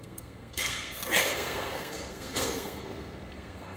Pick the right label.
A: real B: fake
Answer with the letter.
B